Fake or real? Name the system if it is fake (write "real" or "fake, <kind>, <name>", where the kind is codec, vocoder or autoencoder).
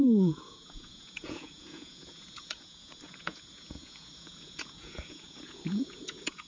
fake, vocoder, Vocos